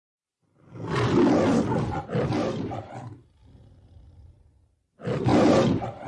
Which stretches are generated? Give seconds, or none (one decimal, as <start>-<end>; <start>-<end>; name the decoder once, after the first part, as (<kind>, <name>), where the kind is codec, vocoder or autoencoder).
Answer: 5.3-6.1 (vocoder, BigVGAN v2)

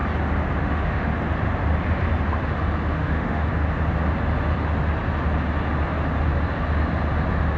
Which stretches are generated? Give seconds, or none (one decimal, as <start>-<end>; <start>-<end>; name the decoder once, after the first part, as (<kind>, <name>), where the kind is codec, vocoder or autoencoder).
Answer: 0.6-1.1 (autoencoder, DAC-VAE); 2.9-3.5